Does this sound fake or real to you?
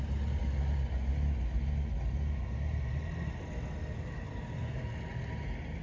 real